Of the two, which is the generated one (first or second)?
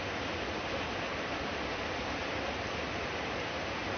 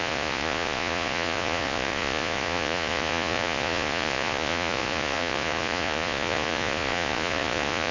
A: second